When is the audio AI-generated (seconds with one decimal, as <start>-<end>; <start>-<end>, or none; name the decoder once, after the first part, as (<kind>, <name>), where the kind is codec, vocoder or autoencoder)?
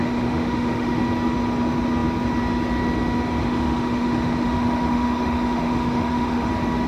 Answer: 0.0-1.0 (autoencoder, DAC-VAE); 3.4-6.5